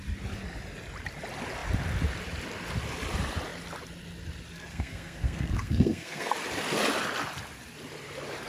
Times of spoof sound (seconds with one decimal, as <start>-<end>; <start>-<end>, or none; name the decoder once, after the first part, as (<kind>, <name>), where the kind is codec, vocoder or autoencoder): 4.7-6.3 (codec, SNAC)